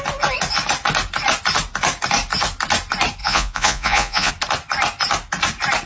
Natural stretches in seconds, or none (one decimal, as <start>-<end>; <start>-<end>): 0.0-3.2; 4.3-5.9